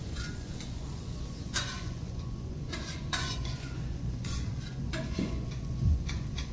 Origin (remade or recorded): remade